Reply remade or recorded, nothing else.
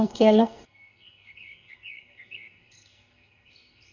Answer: remade